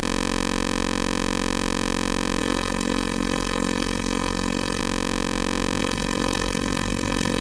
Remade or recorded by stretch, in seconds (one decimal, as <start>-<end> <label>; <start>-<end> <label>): 0.0-2.4 recorded; 2.4-4.8 remade; 4.8-5.8 recorded; 5.8-7.4 remade